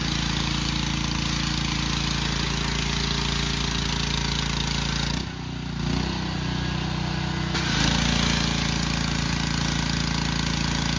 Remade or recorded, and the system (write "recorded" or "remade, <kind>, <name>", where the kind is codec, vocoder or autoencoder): recorded